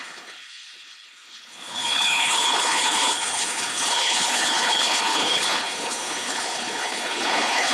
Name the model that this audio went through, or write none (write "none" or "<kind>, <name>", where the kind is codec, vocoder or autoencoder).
codec, HILCodec